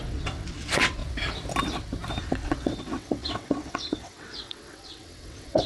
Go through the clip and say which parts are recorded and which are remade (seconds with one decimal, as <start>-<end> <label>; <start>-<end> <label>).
0.0-1.0 remade; 1.0-2.2 recorded; 2.2-5.7 remade